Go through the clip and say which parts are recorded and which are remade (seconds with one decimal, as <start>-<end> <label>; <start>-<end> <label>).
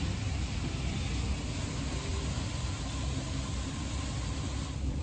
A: 0.0-5.0 recorded